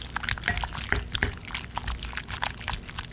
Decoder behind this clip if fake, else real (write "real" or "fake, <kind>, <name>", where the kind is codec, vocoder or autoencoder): real